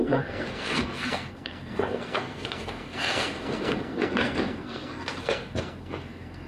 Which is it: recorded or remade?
remade